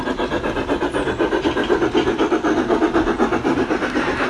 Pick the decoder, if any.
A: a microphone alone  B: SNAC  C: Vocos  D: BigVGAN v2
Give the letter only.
A